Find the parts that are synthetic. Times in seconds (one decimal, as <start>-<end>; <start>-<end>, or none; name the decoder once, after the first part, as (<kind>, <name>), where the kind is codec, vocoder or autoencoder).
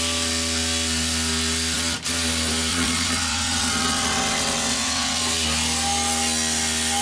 2.7-5.2 (vocoder, WaveNeXt)